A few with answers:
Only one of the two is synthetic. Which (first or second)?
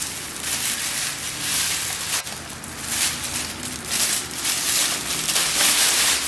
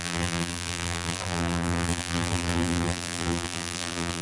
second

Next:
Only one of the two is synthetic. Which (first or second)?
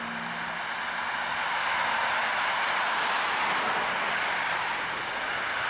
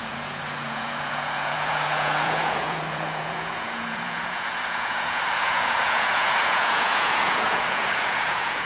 second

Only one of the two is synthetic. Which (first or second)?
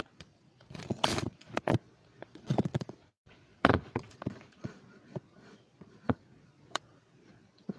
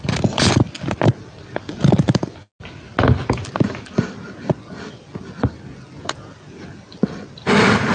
first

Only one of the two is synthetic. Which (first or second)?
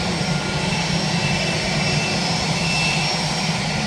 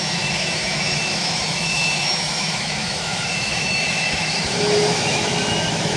second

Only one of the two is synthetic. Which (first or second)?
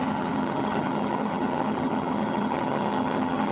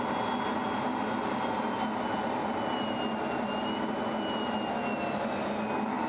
first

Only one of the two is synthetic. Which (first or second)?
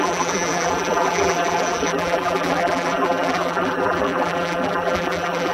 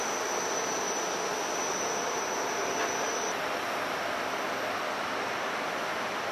first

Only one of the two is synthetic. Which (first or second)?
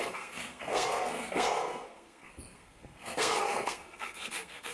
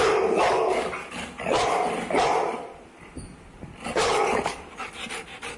first